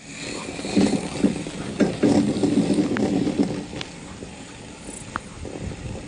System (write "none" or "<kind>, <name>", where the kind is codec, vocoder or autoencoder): none